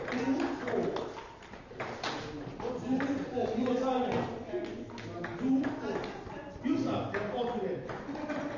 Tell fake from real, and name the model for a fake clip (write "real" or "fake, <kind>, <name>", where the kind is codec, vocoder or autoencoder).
real